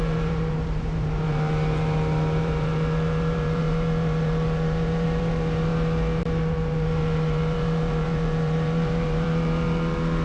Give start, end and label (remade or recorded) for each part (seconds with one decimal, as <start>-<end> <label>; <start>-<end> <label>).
0.0-5.7 remade; 5.7-6.2 recorded; 6.2-10.2 remade